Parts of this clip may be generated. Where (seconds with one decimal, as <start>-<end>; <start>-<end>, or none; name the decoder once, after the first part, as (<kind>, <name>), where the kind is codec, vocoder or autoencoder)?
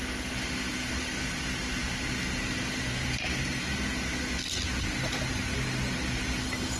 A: none